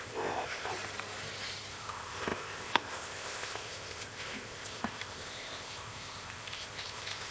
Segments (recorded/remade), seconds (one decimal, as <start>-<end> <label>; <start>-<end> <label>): 0.0-0.7 remade; 0.7-1.7 recorded; 1.7-7.3 remade